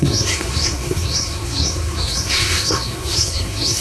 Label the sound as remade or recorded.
remade